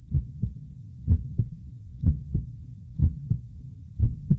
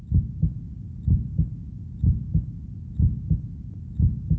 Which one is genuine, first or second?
second